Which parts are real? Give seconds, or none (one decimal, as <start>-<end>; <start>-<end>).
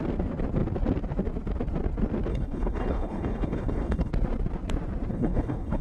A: 0.0-2.3; 4.1-5.1